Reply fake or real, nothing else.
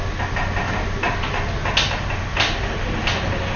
real